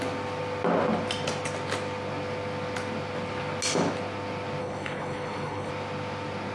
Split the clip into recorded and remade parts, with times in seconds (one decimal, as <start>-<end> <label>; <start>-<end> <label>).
0.0-4.6 recorded; 4.6-5.7 remade; 5.7-6.5 recorded